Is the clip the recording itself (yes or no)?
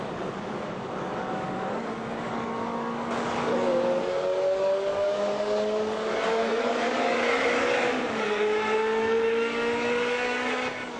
no